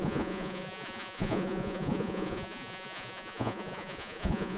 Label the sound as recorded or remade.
remade